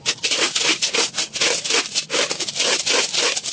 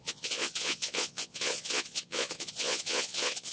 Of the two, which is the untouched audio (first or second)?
first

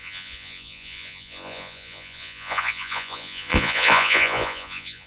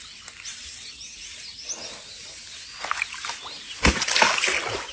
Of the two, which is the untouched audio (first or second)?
second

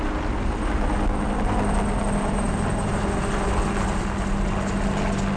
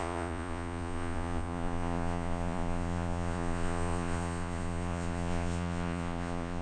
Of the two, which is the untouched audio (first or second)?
first